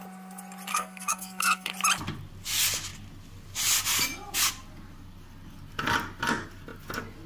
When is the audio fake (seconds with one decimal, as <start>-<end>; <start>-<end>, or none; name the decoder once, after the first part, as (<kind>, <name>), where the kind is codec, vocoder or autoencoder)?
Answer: 0.7-1.7 (codec, SNAC)